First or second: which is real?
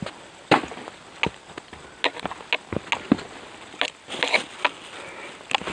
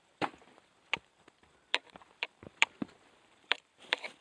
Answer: first